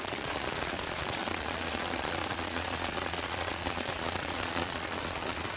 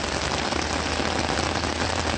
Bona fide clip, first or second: second